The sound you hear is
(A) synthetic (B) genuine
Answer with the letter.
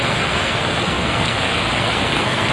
A